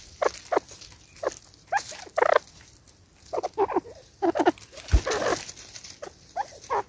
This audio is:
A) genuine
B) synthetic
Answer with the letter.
A